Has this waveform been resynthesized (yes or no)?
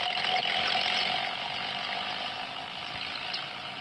no